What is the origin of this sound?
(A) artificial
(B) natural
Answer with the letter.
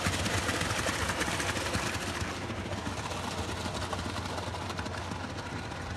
B